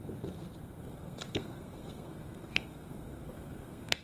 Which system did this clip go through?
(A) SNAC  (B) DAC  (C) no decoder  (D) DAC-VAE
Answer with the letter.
A